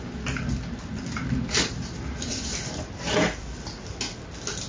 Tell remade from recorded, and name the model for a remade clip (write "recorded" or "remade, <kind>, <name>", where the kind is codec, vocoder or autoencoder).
recorded